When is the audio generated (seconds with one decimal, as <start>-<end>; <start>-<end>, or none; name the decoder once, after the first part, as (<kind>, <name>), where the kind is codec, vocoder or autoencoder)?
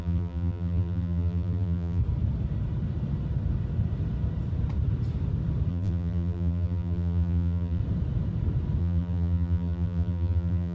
0.0-2.0 (vocoder, BigVGAN v2); 5.7-7.8; 8.8-10.7